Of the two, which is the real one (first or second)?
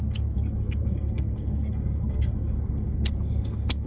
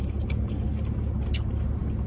second